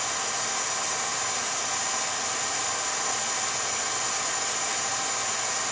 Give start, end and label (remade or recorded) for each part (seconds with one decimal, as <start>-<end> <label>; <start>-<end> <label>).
0.0-5.7 recorded